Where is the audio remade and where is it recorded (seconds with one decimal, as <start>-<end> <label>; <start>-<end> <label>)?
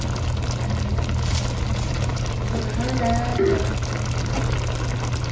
0.0-1.7 recorded; 1.7-2.6 remade; 2.6-5.3 recorded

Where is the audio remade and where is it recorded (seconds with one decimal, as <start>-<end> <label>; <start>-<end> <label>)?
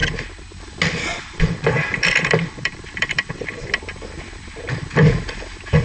0.0-1.1 recorded; 1.1-3.7 remade; 3.7-5.8 recorded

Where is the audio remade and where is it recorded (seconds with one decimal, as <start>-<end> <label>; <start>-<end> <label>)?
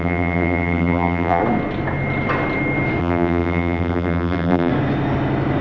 0.0-1.4 remade; 1.4-3.0 recorded; 3.0-4.7 remade; 4.7-5.6 recorded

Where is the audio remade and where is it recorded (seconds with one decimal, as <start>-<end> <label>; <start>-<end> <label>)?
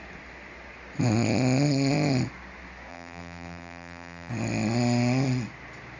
0.0-2.9 recorded; 2.9-4.3 remade; 4.3-6.0 recorded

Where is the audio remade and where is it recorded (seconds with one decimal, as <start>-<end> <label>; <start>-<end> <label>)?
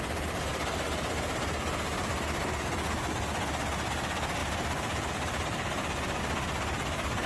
0.0-4.4 recorded; 4.4-6.2 remade; 6.2-7.3 recorded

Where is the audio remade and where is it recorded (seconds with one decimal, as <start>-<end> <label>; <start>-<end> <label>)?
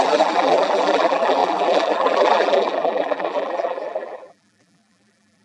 0.0-5.4 remade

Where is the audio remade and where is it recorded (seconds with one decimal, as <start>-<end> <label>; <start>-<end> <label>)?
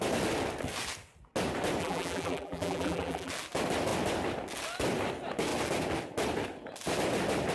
0.0-1.8 recorded; 1.8-3.3 remade; 3.3-7.5 recorded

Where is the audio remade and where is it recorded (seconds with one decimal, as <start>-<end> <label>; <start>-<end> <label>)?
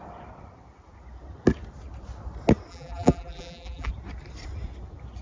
0.0-2.7 recorded; 2.7-3.9 remade; 3.9-5.2 recorded